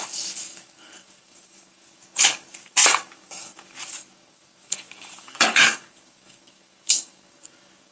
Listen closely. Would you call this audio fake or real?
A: fake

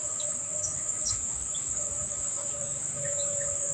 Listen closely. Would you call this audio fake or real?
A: fake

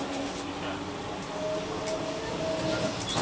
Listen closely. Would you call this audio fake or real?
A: real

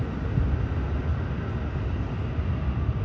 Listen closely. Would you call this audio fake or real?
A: real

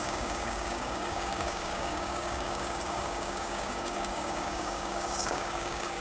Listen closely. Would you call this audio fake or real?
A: fake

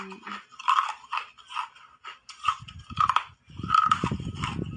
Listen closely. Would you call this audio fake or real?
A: real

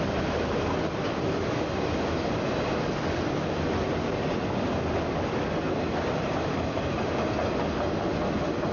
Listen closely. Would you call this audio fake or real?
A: real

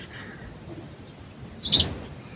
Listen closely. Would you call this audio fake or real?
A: real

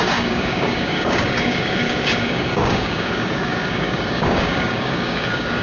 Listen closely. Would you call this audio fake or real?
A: fake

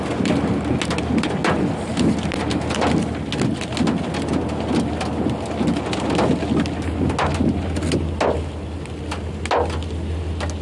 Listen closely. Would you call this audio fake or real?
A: real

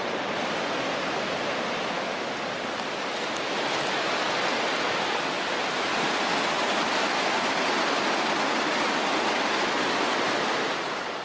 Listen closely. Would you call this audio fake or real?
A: real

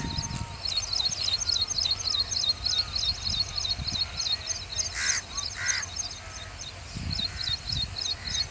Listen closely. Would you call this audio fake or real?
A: real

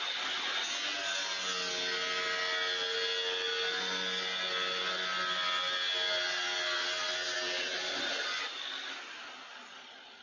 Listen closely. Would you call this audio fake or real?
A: real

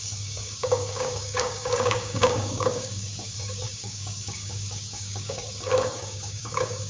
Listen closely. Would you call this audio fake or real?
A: fake